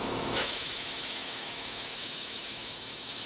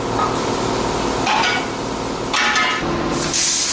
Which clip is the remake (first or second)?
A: first